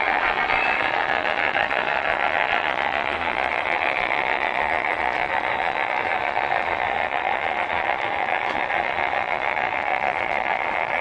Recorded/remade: remade